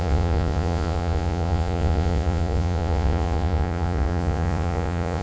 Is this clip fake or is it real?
fake